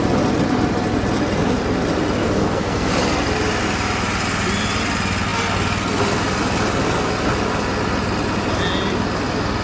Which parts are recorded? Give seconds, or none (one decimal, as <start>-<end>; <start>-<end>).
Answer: 0.0-2.2; 2.9-9.6